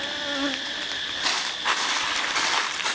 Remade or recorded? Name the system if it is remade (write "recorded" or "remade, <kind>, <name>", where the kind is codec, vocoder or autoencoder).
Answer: recorded